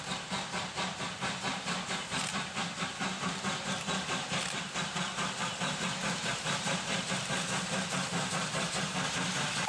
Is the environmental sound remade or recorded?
recorded